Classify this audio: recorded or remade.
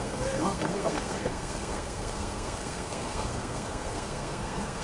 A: remade